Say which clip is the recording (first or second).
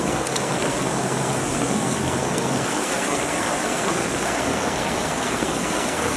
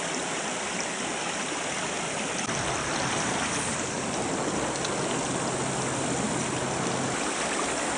second